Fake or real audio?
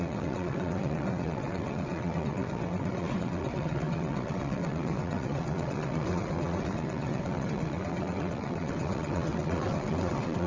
fake